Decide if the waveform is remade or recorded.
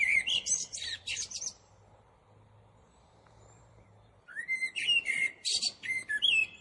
remade